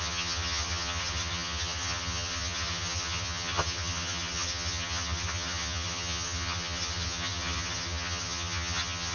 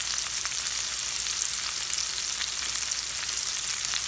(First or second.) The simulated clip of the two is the first